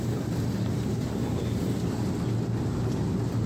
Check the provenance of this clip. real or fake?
real